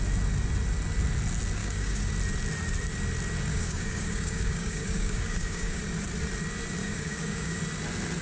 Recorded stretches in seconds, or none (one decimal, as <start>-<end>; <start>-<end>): 0.0-1.6; 2.1-3.5; 5.8-6.8; 7.6-8.2